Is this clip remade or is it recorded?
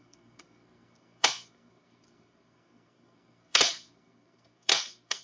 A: remade